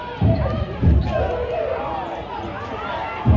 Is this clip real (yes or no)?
yes